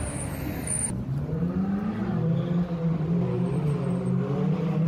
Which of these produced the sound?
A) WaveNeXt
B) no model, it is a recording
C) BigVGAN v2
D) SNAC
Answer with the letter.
B